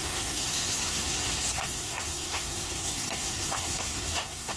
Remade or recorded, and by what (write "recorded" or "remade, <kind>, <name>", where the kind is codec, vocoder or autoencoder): remade, codec, SNAC